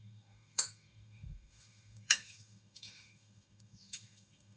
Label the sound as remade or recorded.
remade